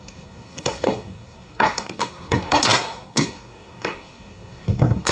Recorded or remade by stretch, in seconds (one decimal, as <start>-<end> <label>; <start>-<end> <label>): 0.0-5.1 remade